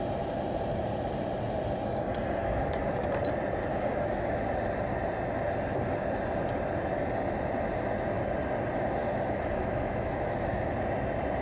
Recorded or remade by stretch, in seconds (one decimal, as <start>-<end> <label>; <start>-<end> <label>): 0.0-2.4 recorded; 2.4-3.1 remade; 3.1-3.7 recorded; 3.7-4.4 remade; 4.4-9.0 recorded; 9.0-10.7 remade; 10.7-11.4 recorded